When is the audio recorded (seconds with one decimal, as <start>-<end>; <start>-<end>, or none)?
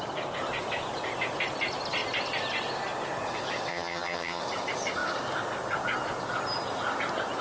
0.0-3.7; 4.4-7.4